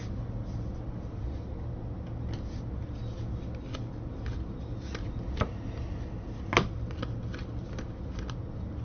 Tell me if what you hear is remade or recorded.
recorded